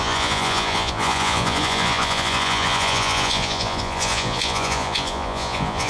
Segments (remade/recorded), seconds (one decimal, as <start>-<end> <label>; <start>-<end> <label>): 0.0-5.9 remade